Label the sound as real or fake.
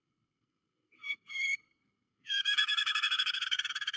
fake